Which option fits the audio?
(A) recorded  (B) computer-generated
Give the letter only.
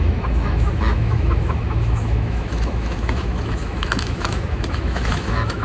B